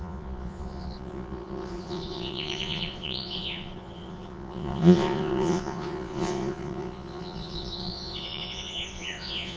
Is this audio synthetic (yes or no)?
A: yes